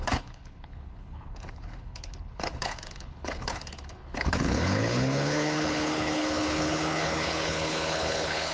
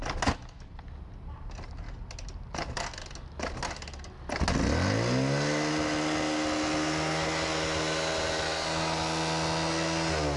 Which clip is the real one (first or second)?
second